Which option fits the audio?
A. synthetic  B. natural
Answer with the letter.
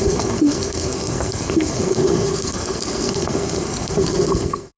A